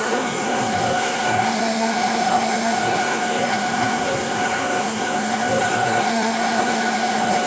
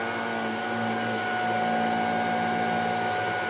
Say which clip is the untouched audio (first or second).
second